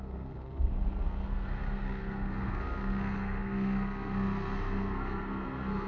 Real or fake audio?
fake